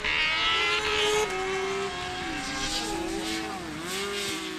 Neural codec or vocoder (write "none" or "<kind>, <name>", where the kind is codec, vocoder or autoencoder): none